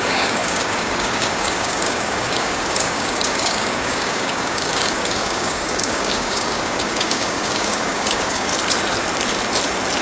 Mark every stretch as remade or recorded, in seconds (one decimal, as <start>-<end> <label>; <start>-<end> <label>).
0.0-8.5 remade; 8.5-10.0 recorded